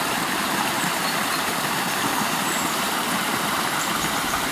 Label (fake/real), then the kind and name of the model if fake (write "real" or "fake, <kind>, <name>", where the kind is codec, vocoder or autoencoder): fake, vocoder, BigVGAN v2